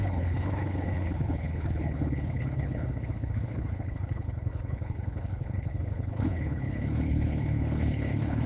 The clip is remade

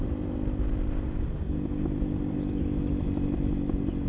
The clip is recorded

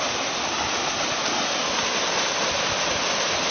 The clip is recorded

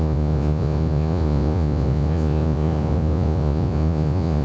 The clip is remade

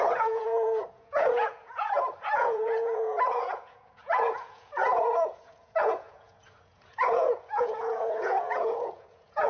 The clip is remade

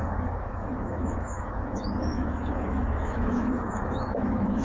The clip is remade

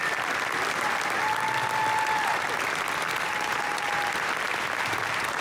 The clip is recorded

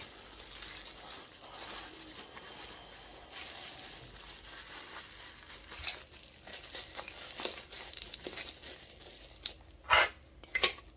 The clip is recorded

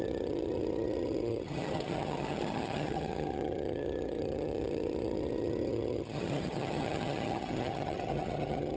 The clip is remade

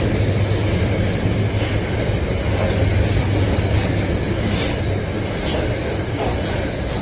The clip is recorded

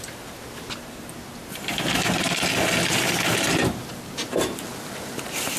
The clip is recorded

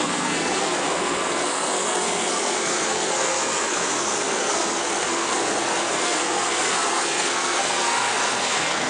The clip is remade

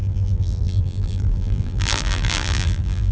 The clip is remade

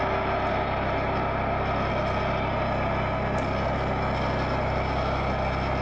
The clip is recorded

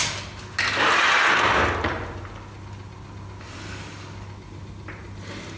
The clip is recorded